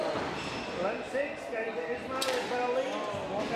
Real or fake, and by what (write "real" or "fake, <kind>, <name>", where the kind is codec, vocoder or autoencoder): real